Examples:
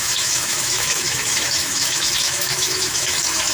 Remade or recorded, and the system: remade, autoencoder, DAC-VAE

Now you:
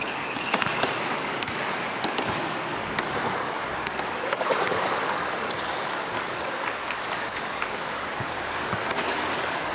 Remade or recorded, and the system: remade, codec, DAC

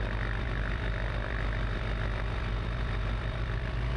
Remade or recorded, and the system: remade, vocoder, BigVGAN v2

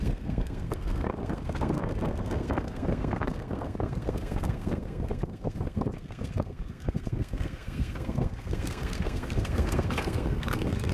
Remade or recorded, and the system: remade, codec, SNAC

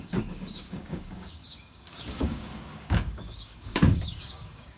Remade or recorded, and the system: remade, codec, DAC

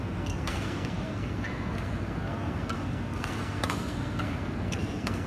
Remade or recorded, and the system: remade, codec, SNAC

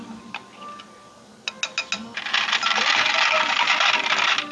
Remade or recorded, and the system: recorded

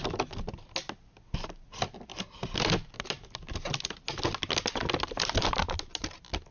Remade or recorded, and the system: recorded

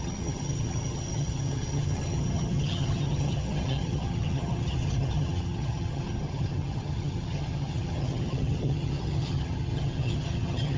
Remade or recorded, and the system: remade, vocoder, HiFi-GAN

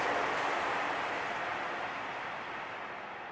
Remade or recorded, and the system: recorded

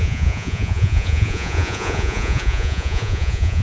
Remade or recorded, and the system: remade, vocoder, Vocos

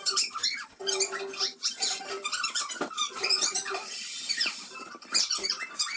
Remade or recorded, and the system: remade, vocoder, BigVGAN v2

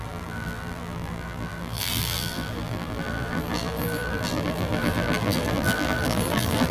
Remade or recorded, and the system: remade, vocoder, BigVGAN v2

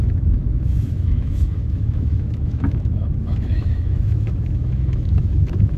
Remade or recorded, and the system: remade, autoencoder, DAC-VAE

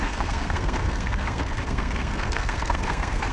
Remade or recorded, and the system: remade, codec, SNAC